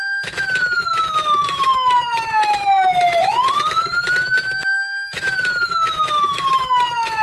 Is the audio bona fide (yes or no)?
no